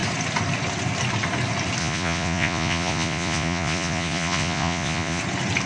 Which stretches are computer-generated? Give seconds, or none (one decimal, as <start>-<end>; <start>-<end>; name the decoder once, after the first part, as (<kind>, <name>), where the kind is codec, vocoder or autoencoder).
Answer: 1.8-5.2 (vocoder, Vocos)